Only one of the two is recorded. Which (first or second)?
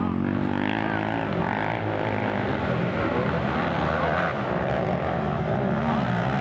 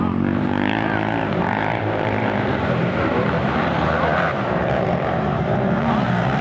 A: first